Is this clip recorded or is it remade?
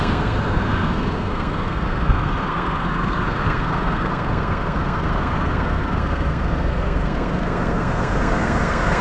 remade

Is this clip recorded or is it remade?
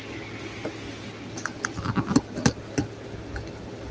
recorded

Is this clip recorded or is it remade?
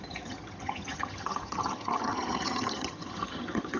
remade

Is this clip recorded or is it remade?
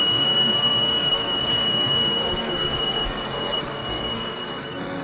remade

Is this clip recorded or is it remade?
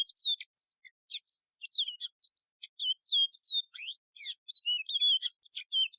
recorded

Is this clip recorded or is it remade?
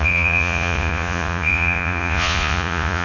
remade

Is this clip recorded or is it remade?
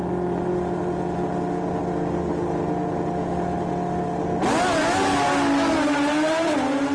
recorded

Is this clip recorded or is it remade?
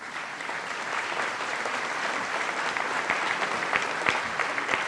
remade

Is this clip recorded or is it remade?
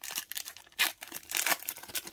remade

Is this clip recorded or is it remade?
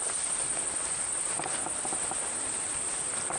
recorded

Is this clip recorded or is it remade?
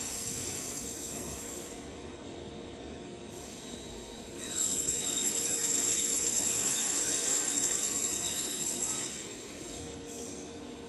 remade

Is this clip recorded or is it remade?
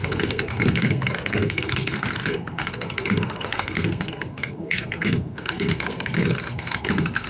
remade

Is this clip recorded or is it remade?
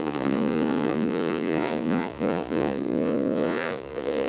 remade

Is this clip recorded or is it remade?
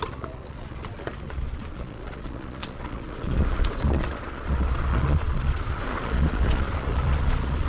remade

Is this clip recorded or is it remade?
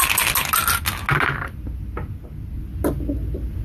recorded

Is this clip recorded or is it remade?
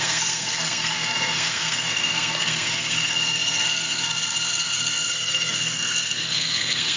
remade